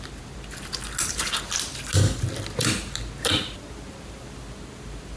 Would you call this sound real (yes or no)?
yes